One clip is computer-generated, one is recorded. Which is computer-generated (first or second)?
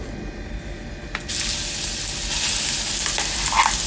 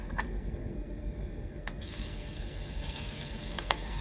second